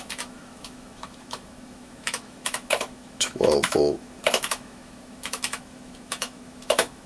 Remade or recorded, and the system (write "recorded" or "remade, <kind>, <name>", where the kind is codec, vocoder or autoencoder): remade, autoencoder, DAC-VAE